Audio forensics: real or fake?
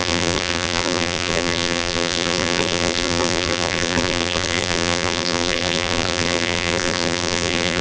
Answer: fake